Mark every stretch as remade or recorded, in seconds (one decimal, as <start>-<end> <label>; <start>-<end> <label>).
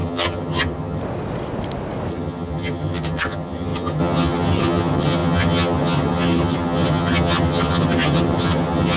0.0-1.0 remade; 1.0-2.1 recorded; 2.1-9.0 remade